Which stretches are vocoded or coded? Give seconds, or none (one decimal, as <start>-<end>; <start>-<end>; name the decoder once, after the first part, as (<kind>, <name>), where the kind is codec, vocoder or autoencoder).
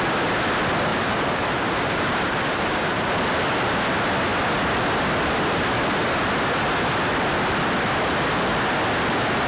0.9-3.1 (vocoder, BigVGAN v2)